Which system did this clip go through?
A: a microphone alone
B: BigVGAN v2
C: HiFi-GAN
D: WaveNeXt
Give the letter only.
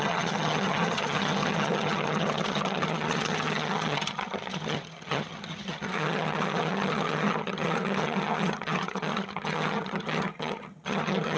C